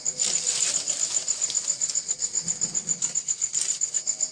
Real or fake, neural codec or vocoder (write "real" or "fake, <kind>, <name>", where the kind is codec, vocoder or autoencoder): real